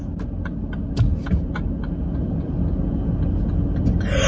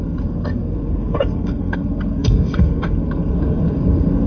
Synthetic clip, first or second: second